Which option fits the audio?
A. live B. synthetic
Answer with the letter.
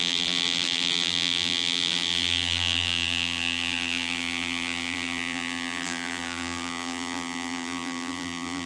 B